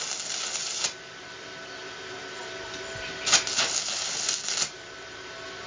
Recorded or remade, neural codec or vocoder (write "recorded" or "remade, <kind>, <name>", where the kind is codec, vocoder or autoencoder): recorded